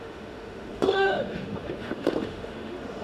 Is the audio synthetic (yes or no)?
yes